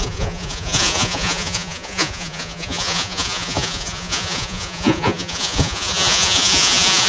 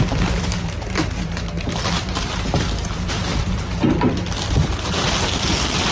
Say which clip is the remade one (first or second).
first